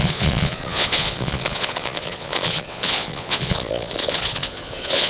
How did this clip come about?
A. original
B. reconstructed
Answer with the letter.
B